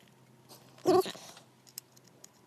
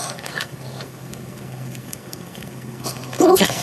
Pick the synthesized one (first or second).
second